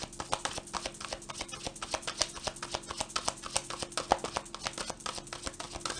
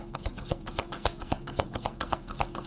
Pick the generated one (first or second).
second